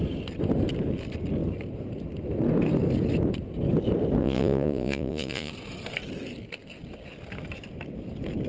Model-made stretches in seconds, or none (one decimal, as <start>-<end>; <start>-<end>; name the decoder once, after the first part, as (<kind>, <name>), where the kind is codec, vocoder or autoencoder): 4.2-5.5 (vocoder, Vocos)